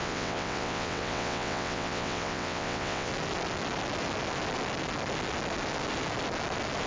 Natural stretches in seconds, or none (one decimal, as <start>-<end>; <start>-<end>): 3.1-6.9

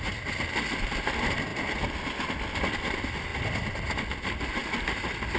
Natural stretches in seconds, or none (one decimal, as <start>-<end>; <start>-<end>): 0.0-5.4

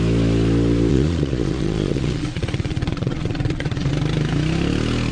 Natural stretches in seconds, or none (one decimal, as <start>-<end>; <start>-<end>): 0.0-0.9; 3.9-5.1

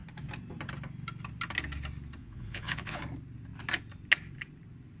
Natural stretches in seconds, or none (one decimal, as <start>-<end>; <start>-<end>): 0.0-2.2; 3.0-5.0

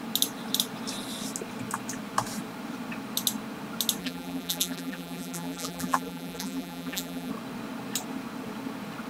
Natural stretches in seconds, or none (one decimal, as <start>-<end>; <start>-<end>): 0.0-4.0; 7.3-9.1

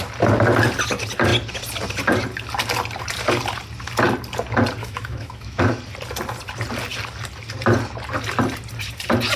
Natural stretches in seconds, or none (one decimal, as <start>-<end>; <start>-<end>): 0.0-4.8; 5.6-9.4

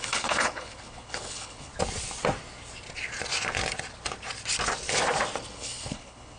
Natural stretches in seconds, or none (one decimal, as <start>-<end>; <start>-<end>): 1.7-5.5